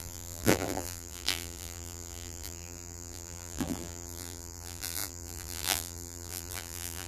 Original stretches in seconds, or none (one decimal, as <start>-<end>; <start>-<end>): none